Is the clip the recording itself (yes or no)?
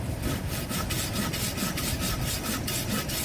yes